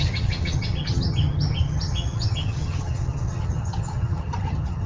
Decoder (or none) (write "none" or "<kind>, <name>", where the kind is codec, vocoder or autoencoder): vocoder, HiFi-GAN